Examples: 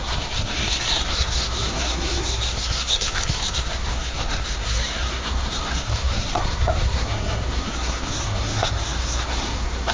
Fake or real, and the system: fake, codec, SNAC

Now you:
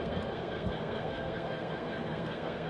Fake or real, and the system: fake, codec, SNAC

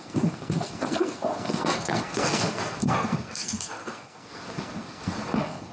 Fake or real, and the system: fake, codec, SNAC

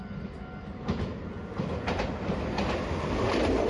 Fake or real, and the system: real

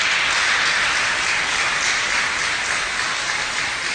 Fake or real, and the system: real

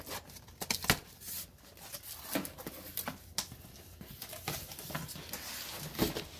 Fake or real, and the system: real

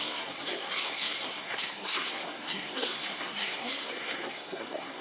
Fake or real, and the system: fake, codec, SNAC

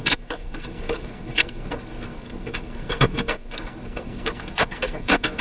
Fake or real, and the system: fake, codec, SNAC